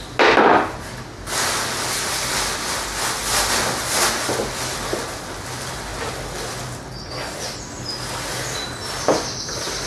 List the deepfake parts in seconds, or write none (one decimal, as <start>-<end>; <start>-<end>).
none